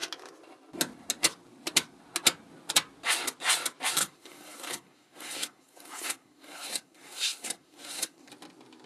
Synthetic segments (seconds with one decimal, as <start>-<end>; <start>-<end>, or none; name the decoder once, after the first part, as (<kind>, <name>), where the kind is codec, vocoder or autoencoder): 4.0-8.3 (codec, SNAC)